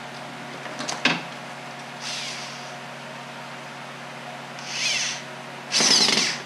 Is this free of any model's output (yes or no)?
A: yes